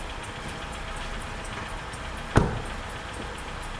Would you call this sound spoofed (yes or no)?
yes